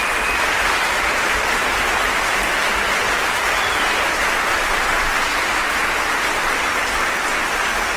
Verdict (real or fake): real